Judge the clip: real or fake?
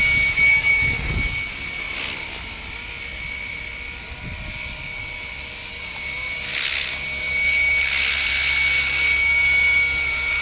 real